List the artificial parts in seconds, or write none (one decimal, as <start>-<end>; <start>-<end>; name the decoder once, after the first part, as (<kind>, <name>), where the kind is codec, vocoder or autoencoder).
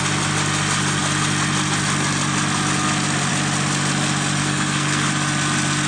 4.4-5.1 (codec, SNAC)